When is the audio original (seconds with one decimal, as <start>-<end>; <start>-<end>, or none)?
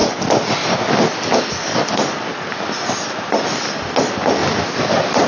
0.0-5.3